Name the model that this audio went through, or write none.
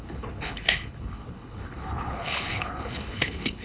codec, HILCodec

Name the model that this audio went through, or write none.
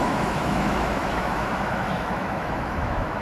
autoencoder, DAC-VAE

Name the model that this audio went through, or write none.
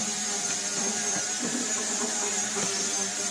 none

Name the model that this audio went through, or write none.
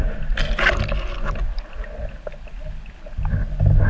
none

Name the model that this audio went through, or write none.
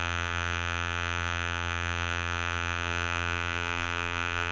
vocoder, BigVGAN v2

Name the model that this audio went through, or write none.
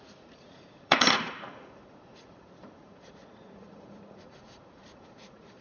vocoder, Vocos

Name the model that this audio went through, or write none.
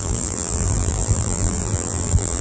vocoder, BigVGAN v2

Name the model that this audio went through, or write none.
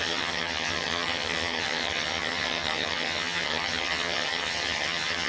vocoder, HiFi-GAN